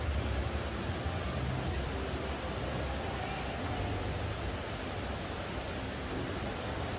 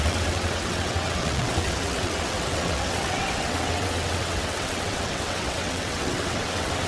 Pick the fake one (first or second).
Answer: second